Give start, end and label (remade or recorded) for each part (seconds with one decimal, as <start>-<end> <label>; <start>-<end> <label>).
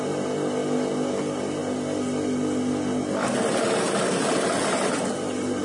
0.0-5.6 recorded